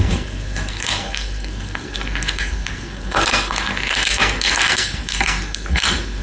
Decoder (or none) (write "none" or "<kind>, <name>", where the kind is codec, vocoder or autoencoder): codec, SNAC